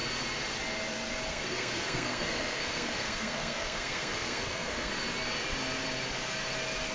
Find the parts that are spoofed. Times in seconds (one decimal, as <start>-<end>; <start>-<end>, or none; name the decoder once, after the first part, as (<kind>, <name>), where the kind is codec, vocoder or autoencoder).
1.3-4.9 (codec, SNAC)